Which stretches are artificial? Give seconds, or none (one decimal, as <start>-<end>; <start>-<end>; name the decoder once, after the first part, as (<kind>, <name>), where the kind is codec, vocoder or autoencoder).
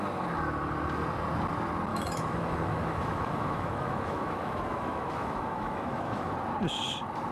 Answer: 1.9-6.3 (autoencoder, DAC-VAE)